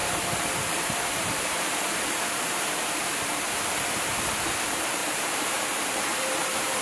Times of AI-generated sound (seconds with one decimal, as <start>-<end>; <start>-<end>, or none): 0.0-3.4; 5.0-6.8